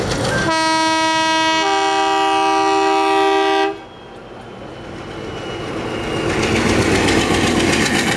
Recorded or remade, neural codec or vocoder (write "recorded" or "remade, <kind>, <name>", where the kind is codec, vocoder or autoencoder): recorded